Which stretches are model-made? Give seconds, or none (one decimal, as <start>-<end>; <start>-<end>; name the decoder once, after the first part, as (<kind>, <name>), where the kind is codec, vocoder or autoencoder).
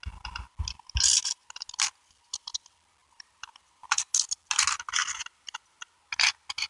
3.0-4.1 (vocoder, BigVGAN v2)